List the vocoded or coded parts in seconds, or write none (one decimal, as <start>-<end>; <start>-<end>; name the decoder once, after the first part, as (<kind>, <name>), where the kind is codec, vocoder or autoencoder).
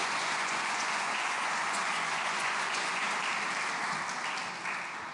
0.0-3.1 (vocoder, Vocos)